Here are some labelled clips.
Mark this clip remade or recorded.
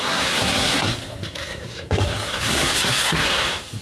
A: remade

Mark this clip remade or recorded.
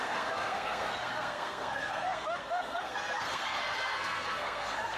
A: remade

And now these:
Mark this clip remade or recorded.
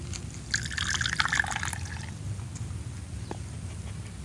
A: recorded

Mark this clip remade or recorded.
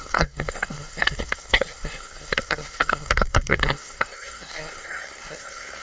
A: remade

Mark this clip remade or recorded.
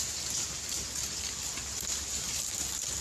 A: recorded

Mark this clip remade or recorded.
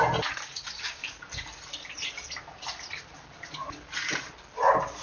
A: recorded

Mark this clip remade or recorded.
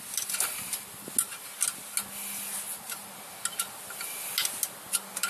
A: recorded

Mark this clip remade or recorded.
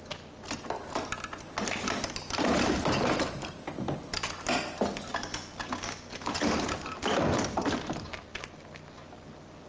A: recorded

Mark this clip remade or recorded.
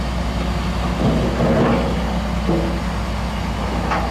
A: recorded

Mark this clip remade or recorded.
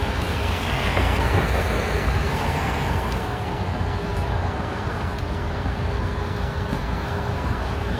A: remade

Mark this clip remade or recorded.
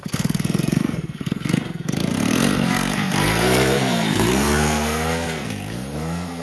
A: remade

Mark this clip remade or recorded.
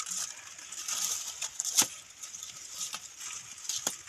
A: recorded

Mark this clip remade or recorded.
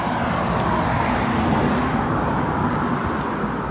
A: recorded